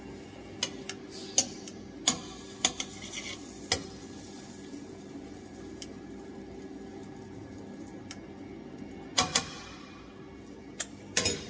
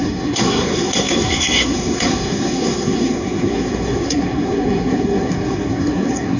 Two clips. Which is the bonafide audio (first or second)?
first